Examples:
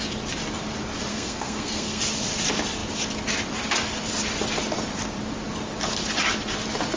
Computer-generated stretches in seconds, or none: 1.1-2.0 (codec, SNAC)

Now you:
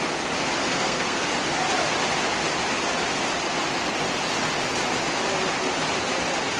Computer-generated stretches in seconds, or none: 0.6-1.3 (codec, SNAC)

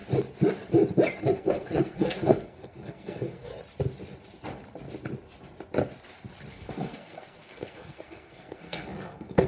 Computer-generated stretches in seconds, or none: 1.2-3.5 (codec, SNAC); 6.5-9.5

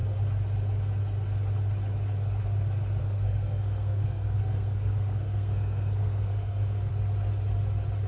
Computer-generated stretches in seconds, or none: 3.0-6.9 (codec, SNAC)

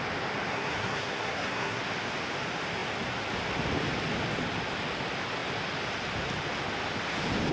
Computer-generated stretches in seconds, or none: 0.5-1.8 (codec, SNAC)

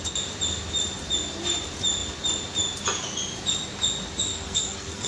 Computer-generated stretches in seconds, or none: 4.3-5.1 (codec, SNAC)